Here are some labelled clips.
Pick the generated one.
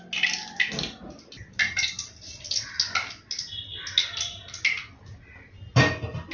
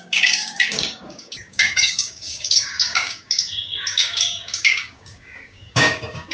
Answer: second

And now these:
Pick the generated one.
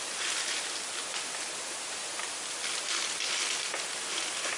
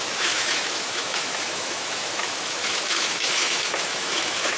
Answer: second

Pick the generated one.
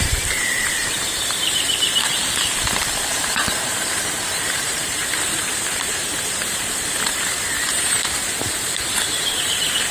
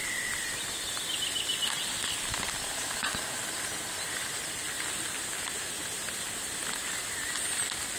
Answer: first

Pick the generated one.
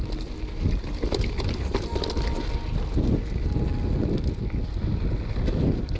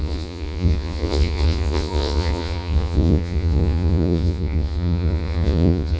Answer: second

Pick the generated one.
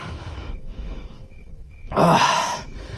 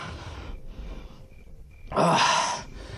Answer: first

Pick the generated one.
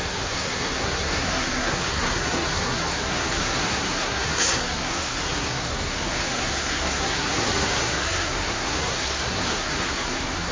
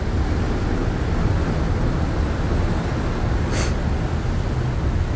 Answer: first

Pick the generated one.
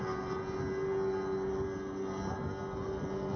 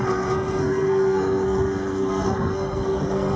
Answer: second